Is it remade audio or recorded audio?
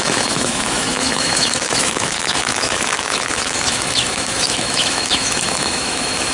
remade